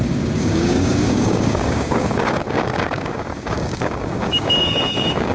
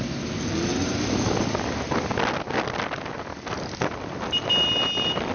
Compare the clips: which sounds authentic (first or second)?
second